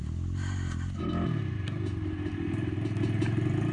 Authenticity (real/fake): real